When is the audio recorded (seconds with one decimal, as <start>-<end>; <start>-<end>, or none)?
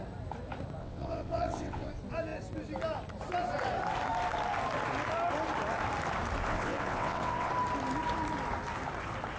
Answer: 0.0-0.8; 1.9-6.5; 7.5-9.4